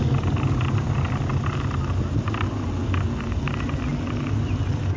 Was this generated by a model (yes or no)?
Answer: no